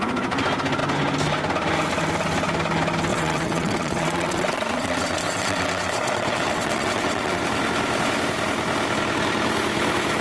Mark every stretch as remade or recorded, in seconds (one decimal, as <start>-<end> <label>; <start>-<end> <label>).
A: 0.0-3.1 recorded; 3.1-7.4 remade; 7.4-10.2 recorded